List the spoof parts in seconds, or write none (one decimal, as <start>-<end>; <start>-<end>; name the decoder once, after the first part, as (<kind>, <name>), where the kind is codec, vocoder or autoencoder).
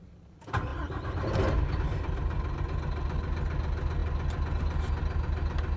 0.7-2.6 (vocoder, BigVGAN v2)